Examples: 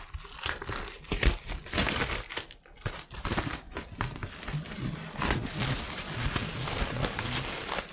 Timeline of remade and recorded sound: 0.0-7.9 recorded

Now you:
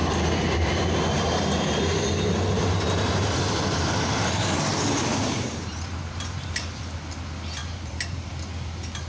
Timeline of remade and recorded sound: 0.0-5.1 recorded; 5.1-6.8 remade; 6.8-7.6 recorded; 7.6-8.3 remade; 8.3-9.1 recorded

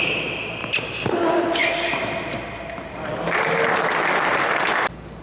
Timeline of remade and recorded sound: 0.0-0.6 recorded; 0.6-1.2 remade; 1.2-5.2 recorded